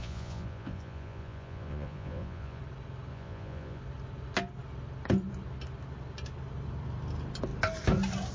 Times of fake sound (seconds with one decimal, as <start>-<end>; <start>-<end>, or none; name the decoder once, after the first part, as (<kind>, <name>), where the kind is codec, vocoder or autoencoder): 0.0-2.6 (vocoder, Vocos); 3.1-3.8